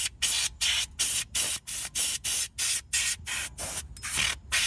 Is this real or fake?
real